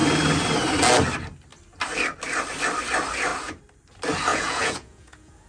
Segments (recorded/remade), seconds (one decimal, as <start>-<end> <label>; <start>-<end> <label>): 0.0-4.3 recorded; 4.3-5.5 remade